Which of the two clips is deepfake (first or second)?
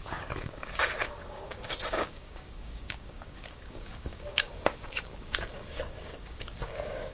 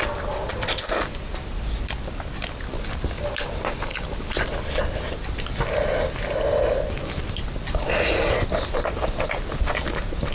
first